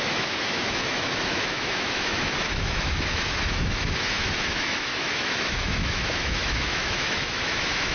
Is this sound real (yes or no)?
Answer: no